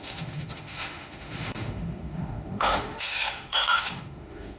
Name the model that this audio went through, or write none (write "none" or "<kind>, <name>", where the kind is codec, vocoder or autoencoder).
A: autoencoder, DAC-VAE